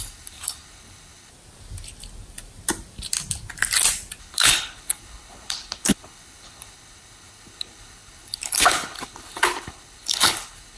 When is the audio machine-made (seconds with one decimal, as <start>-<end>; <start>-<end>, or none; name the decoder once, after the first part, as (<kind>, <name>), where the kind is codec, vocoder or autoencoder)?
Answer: 0.0-1.3 (codec, HILCodec); 4.2-10.8